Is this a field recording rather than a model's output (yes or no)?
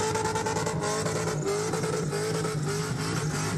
yes